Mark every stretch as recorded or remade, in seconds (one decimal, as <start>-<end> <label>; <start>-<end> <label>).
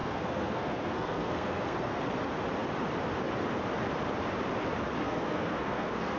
0.0-2.0 remade; 2.0-5.0 recorded; 5.0-6.2 remade